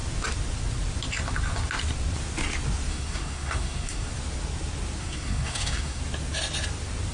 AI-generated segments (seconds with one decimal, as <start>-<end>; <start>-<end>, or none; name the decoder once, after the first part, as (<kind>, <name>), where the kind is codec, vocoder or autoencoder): 2.9-4.1 (codec, SNAC); 5.0-6.0